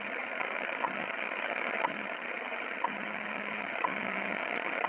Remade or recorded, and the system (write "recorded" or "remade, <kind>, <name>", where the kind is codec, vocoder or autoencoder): remade, vocoder, HiFi-GAN